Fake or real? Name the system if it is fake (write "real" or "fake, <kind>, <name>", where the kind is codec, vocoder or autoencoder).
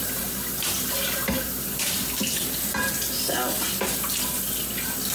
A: real